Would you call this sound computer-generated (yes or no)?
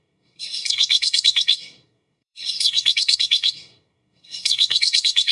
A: yes